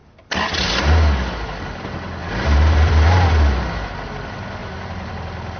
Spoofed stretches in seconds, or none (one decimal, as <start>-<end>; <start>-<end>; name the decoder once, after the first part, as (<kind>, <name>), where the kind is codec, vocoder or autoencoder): 2.2-3.9 (vocoder, BigVGAN v2); 4.6-5.1